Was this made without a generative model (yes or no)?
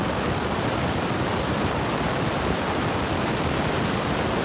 yes